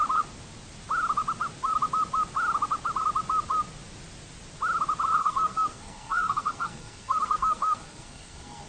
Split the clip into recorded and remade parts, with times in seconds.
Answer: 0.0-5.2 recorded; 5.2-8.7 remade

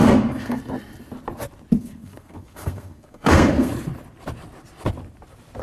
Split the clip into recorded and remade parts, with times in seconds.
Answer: 0.0-0.6 remade; 0.6-1.8 recorded; 1.8-3.7 remade; 3.7-5.6 recorded